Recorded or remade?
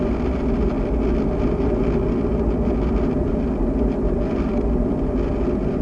recorded